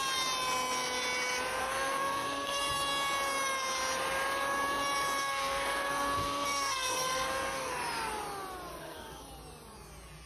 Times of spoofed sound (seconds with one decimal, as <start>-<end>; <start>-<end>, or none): 1.6-2.7; 5.2-7.7; 8.7-9.3